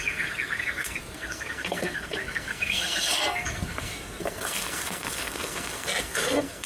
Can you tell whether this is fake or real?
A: fake